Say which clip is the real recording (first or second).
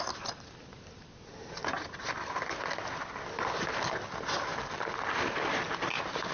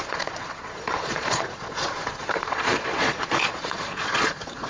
first